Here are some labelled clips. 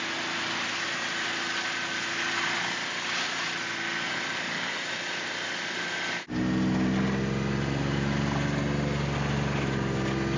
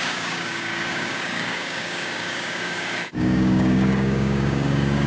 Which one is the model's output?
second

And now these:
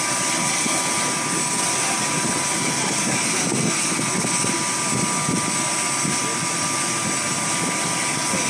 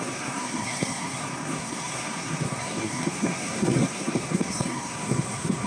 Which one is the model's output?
second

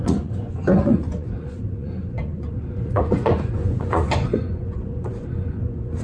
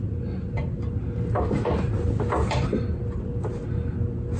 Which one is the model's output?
first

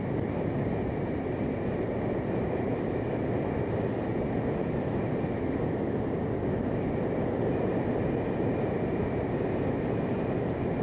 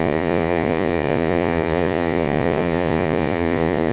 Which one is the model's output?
second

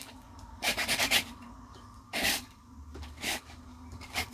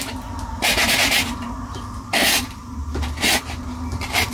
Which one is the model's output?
first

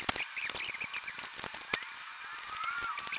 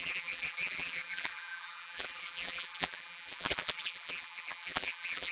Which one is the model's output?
second